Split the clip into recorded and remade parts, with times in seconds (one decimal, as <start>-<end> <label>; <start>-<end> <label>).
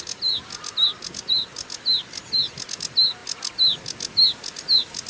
0.0-5.1 recorded